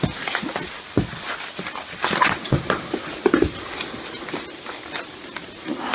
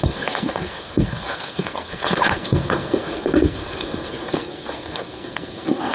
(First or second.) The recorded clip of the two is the first